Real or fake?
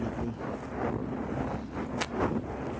real